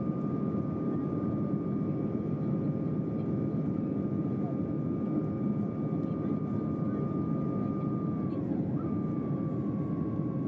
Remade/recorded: recorded